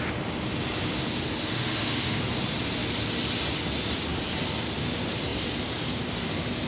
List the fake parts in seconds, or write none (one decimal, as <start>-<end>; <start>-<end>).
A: 1.4-2.2